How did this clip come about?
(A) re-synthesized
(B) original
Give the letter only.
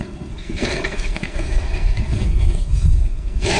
A